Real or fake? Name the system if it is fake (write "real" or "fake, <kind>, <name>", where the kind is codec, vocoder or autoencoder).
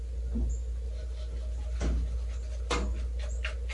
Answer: real